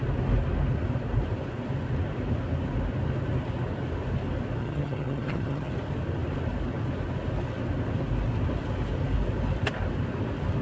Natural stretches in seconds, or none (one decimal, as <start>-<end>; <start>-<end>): 0.0-4.6; 5.7-10.6